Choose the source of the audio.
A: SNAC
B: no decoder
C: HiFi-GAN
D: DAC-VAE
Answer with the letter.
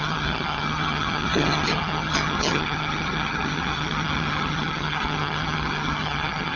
C